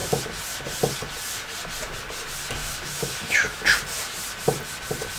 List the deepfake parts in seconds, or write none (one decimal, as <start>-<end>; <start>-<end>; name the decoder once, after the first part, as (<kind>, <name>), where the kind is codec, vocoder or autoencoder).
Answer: 2.6-3.6 (autoencoder, DAC-VAE)